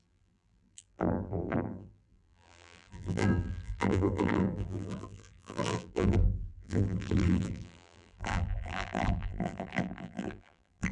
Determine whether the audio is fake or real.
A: fake